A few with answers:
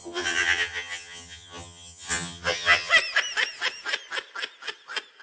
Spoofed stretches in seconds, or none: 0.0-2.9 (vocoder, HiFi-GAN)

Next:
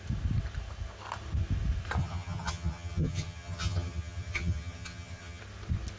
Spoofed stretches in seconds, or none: 2.0-5.4 (vocoder, HiFi-GAN)

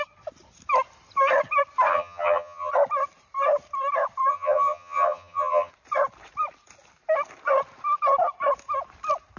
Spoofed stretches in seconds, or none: 1.9-2.7 (vocoder, HiFi-GAN); 4.3-5.7